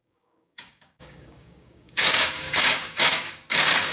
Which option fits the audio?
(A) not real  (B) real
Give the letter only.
A